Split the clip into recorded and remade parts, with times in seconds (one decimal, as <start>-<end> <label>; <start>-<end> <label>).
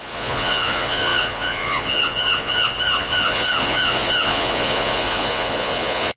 0.0-6.2 remade